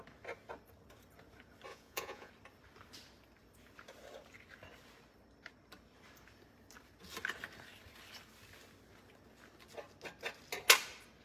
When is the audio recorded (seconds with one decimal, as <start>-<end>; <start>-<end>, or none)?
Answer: 0.0-1.7; 2.3-11.2